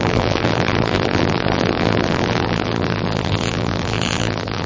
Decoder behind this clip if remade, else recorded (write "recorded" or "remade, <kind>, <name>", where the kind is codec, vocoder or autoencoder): remade, vocoder, BigVGAN v2